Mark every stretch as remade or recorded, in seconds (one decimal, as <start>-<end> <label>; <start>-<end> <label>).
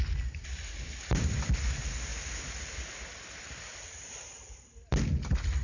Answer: 0.0-5.6 recorded